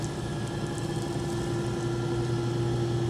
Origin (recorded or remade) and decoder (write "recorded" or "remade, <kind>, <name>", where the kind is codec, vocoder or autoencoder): recorded